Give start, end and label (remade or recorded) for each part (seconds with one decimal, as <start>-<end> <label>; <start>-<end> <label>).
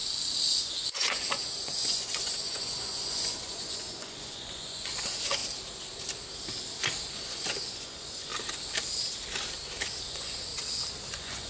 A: 0.0-0.7 recorded; 0.7-5.4 remade; 5.4-7.1 recorded; 7.1-8.3 remade; 8.3-10.0 recorded; 10.0-10.5 remade; 10.5-11.1 recorded; 11.1-11.5 remade